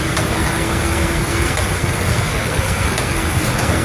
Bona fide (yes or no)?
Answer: no